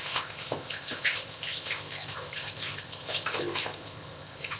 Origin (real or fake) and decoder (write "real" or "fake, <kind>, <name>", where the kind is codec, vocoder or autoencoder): fake, codec, ZipCodec